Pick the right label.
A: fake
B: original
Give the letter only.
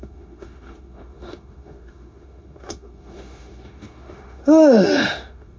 A